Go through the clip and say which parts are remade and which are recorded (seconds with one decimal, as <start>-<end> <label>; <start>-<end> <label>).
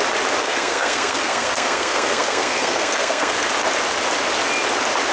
0.0-0.4 recorded; 0.4-3.5 remade; 3.5-5.1 recorded